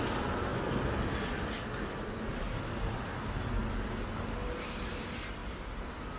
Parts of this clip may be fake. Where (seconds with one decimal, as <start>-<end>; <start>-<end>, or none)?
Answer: none